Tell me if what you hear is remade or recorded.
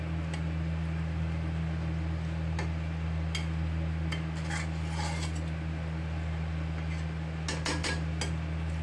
recorded